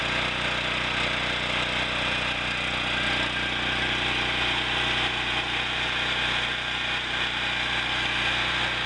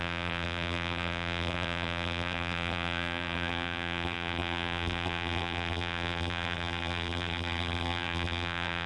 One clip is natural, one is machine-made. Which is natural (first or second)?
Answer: first